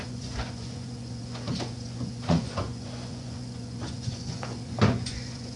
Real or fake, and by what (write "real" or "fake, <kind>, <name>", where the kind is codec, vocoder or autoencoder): fake, vocoder, Vocos